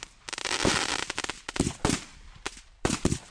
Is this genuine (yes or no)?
no